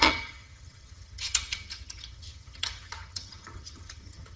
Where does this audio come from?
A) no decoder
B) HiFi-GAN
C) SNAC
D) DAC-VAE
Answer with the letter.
B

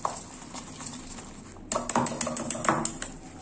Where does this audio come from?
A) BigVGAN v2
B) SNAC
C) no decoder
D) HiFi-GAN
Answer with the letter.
C